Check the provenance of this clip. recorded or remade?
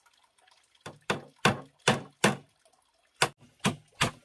recorded